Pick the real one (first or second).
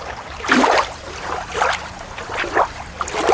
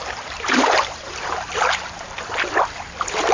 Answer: first